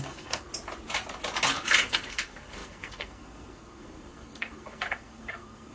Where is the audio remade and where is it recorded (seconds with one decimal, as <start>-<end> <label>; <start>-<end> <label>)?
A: 0.0-0.5 remade; 0.5-1.8 recorded; 1.8-5.7 remade